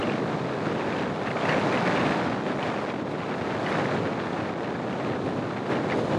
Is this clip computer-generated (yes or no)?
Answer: no